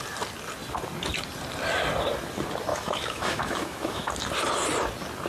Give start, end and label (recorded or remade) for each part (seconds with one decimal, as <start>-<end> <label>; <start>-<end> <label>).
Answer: 0.0-2.7 recorded; 2.7-4.1 remade; 4.1-5.3 recorded